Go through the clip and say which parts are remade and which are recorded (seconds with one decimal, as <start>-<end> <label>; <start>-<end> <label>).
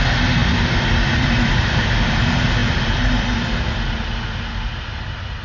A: 0.0-0.4 recorded; 0.4-1.7 remade; 1.7-5.4 recorded